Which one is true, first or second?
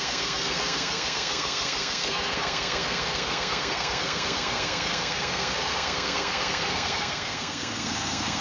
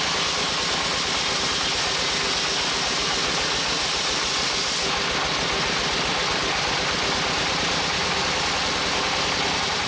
second